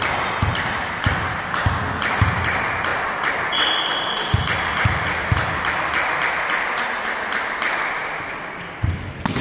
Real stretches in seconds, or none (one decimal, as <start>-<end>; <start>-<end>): 0.0-9.4